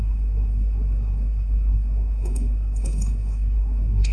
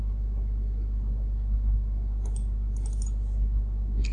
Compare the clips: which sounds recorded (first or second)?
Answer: second